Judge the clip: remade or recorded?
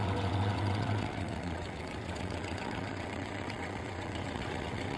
remade